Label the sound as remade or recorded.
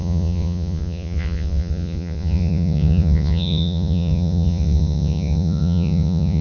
remade